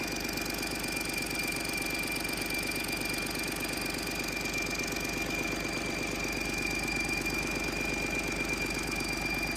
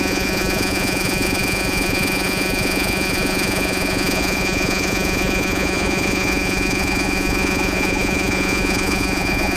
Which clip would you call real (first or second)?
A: first